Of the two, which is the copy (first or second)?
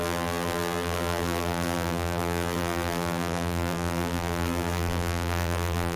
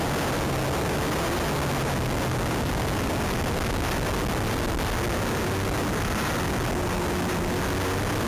first